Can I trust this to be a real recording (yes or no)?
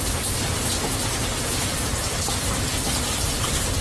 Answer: yes